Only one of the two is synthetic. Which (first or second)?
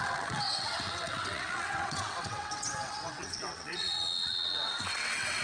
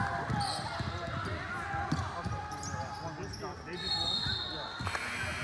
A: first